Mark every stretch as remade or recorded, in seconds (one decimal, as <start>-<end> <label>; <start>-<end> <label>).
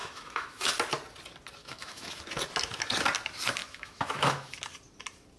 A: 0.0-0.7 remade; 0.7-1.6 recorded; 1.6-2.2 remade; 2.2-3.6 recorded; 3.6-4.5 remade; 4.5-5.4 recorded